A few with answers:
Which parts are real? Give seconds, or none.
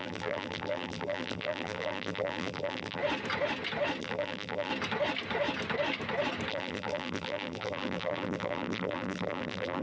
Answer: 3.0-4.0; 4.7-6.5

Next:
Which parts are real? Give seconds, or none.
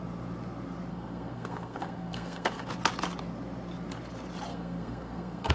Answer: 0.0-0.9; 2.7-4.5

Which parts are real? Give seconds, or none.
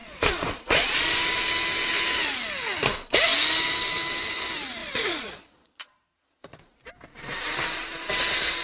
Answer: 1.2-4.8; 6.9-8.6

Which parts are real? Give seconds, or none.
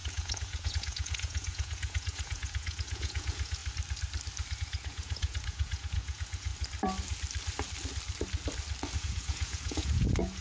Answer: 3.6-4.6; 6.5-9.0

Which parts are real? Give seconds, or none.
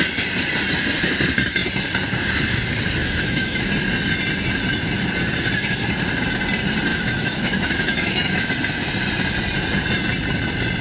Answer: 0.0-3.0; 3.7-6.9; 8.5-10.8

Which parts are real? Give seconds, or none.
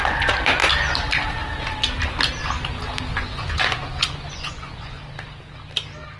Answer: 0.0-3.1; 5.0-6.2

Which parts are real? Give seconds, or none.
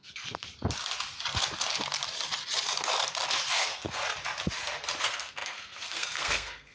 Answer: 0.5-3.5; 4.0-5.0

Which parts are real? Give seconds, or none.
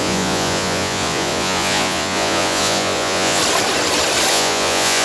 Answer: 3.4-4.3